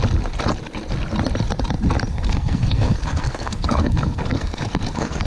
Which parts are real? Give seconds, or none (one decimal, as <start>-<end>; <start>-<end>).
0.0-2.1